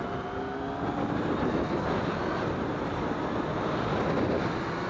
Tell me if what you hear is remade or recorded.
recorded